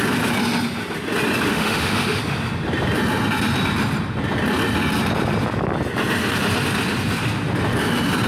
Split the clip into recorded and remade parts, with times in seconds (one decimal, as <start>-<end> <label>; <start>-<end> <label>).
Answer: 0.0-1.5 recorded; 1.5-2.2 remade; 2.2-8.3 recorded